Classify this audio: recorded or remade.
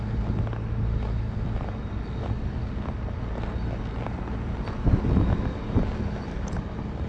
recorded